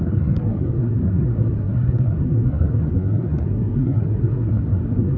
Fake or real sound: fake